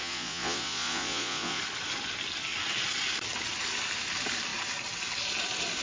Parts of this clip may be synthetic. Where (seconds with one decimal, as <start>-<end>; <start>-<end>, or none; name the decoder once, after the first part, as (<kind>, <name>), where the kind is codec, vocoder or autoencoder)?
0.0-1.6 (vocoder, Vocos)